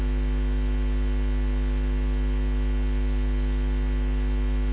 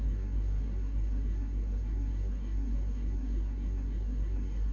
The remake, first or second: second